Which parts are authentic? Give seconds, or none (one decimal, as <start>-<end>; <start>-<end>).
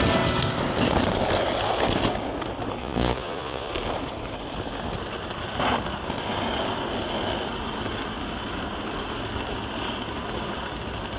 0.0-2.8; 3.7-11.2